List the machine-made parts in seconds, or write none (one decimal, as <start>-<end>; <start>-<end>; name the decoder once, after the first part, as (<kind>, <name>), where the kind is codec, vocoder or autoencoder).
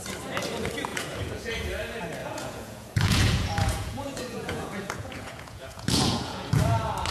0.9-1.7 (vocoder, Vocos); 2.2-6.5